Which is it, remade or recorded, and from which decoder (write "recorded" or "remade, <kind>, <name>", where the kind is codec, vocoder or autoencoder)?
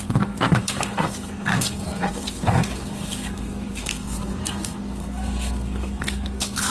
remade, codec, SNAC